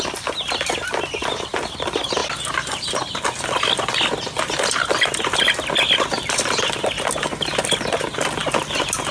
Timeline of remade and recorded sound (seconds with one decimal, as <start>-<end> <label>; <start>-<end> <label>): 0.0-9.1 recorded

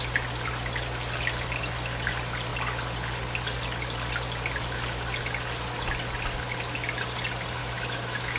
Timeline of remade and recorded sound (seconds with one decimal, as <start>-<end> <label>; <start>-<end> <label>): 0.0-7.6 recorded; 7.6-8.4 remade

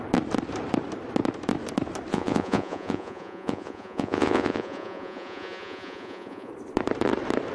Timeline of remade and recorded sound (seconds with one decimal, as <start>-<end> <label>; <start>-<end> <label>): 0.0-2.1 recorded; 2.1-6.5 remade; 6.5-7.5 recorded

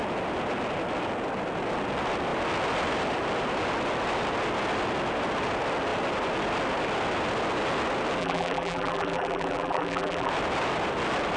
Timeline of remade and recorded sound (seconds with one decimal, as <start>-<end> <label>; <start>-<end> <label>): 0.0-8.2 recorded; 8.2-10.3 remade; 10.3-11.4 recorded

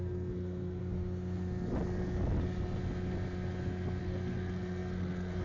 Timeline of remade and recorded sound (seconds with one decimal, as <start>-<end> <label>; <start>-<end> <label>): 0.0-0.8 remade; 0.8-4.0 recorded; 4.0-5.4 remade

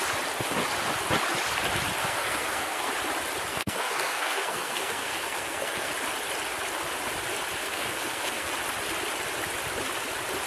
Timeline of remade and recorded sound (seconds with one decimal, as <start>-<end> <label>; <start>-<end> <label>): 0.0-2.0 recorded; 2.0-2.9 remade; 2.9-3.5 recorded; 3.5-5.9 remade; 5.9-7.6 recorded; 7.6-8.5 remade; 8.5-10.5 recorded